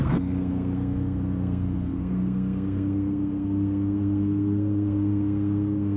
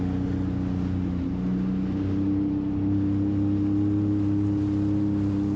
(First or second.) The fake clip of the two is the first